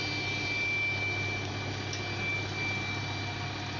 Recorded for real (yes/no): yes